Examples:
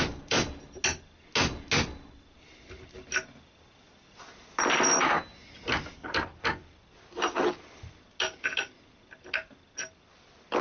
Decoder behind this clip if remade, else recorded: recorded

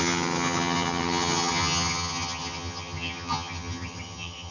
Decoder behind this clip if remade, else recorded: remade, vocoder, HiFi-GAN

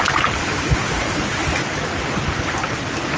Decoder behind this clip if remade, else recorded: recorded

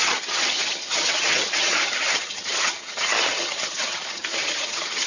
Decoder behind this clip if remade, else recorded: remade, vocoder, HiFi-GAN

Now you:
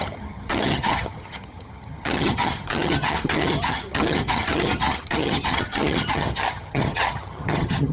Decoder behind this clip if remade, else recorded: remade, vocoder, HiFi-GAN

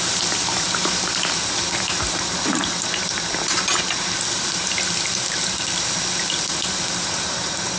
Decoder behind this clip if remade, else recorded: recorded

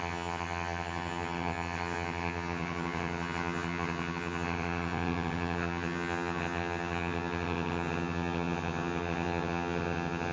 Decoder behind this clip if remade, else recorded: remade, vocoder, HiFi-GAN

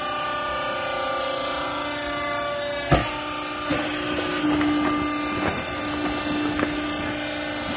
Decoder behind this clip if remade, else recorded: recorded